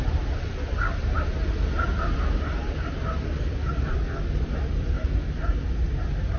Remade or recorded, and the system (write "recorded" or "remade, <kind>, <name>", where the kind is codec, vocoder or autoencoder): recorded